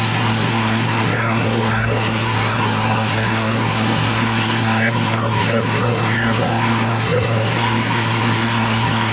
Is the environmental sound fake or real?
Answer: fake